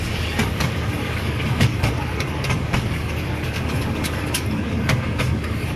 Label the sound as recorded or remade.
remade